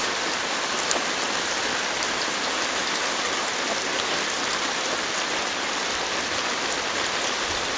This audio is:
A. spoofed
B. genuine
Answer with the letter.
B